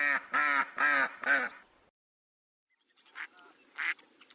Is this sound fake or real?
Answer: real